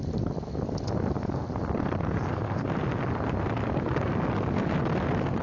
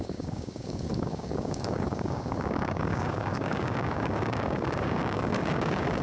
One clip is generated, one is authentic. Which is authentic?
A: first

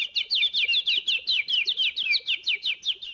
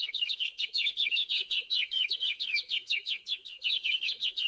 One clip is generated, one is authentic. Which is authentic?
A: first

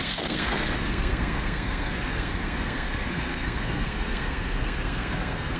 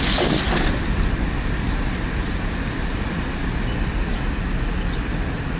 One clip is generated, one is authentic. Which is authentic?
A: second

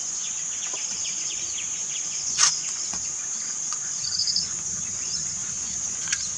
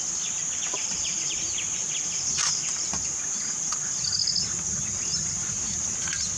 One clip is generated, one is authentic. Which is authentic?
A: second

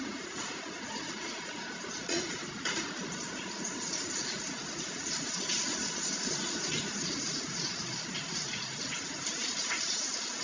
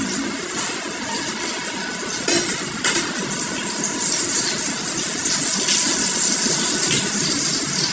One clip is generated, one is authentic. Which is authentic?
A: second